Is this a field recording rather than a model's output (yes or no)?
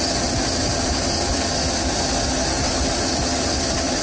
yes